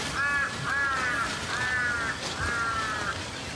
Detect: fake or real real